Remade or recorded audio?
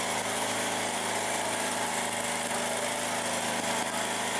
recorded